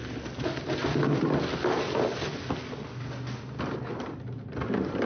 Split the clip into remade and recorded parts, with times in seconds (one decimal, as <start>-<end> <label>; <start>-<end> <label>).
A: 0.0-5.1 recorded